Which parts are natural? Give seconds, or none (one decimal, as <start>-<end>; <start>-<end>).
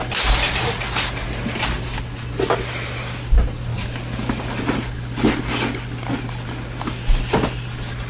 0.0-8.1